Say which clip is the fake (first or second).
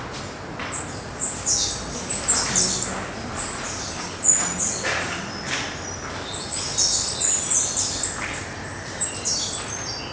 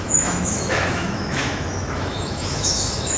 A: second